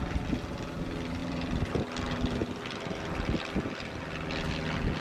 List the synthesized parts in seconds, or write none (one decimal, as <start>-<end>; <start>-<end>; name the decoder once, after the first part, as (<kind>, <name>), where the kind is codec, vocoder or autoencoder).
1.2-1.8 (vocoder, BigVGAN v2)